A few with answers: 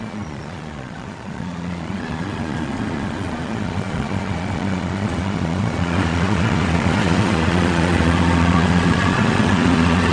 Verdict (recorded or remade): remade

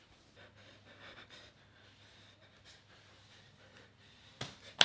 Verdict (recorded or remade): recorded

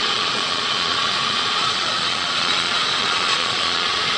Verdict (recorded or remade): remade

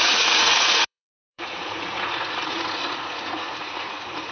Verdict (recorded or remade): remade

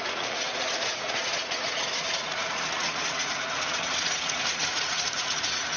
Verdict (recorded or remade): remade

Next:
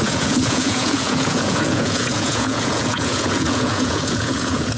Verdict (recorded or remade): remade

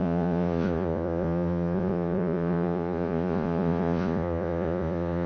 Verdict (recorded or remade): remade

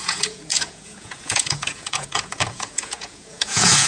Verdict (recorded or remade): remade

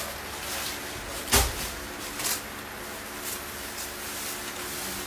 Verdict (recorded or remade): recorded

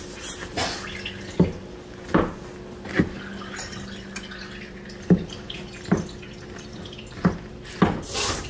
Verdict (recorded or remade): recorded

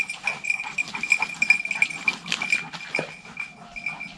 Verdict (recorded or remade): recorded